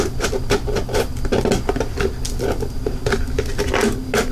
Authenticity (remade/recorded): recorded